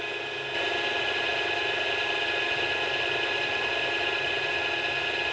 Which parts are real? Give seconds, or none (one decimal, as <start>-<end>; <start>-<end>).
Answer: 0.0-1.3; 4.5-5.3